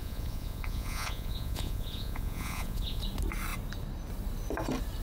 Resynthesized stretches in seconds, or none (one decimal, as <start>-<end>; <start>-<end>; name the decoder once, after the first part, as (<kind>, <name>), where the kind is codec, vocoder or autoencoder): 0.0-3.0 (vocoder, Vocos)